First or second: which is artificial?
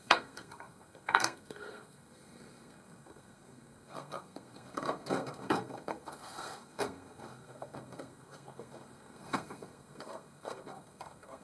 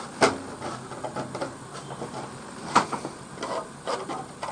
first